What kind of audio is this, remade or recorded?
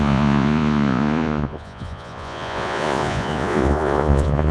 remade